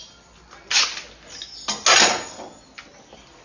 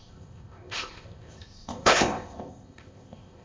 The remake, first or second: second